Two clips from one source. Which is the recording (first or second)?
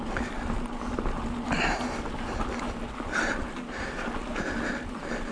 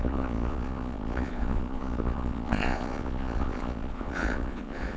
first